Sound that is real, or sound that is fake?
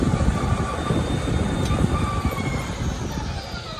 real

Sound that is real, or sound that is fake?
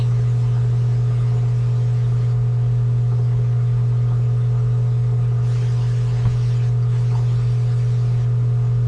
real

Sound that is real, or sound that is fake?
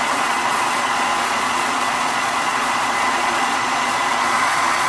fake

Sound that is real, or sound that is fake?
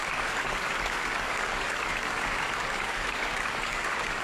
fake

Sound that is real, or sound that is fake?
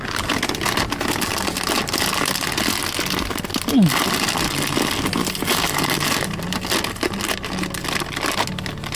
real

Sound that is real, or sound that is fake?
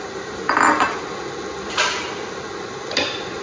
real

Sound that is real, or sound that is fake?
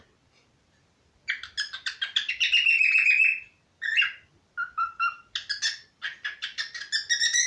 real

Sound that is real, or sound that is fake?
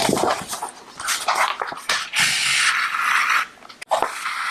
real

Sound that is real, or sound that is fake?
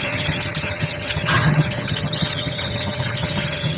fake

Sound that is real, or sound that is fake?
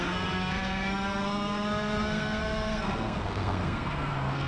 fake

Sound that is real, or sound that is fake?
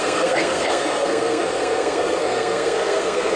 fake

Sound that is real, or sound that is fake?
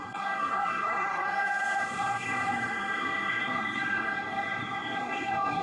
fake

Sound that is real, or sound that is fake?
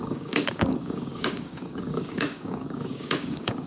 fake